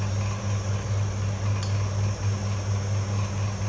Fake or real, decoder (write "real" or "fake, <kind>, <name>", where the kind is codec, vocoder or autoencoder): real